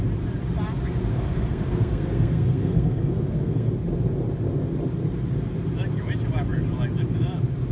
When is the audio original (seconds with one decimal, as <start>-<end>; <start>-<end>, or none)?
0.0-1.1; 3.7-7.7